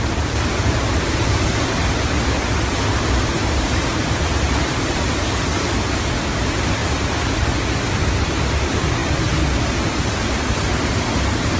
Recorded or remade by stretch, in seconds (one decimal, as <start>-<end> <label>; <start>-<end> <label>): 0.0-11.6 recorded